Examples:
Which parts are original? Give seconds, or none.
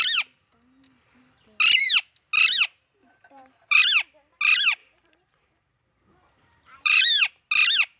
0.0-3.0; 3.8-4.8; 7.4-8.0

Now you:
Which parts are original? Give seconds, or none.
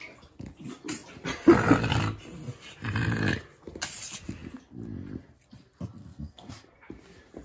0.0-6.0; 6.5-7.4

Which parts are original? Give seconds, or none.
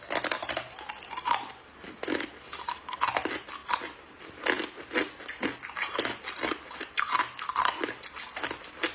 0.0-8.9